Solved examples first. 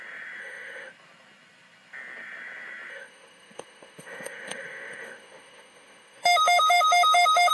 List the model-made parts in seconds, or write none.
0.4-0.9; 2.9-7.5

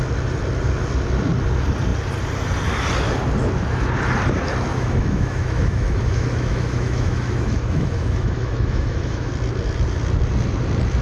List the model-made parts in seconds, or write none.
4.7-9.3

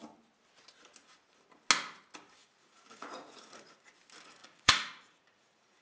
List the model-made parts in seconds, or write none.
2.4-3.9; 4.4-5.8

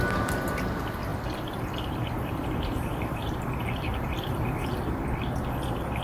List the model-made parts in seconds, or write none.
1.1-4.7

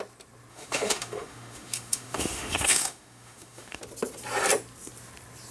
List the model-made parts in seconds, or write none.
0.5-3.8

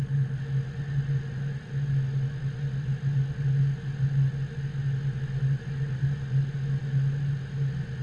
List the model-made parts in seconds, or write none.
none